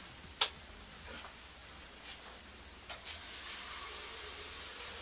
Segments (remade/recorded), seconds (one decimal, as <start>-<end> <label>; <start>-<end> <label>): 0.0-5.0 recorded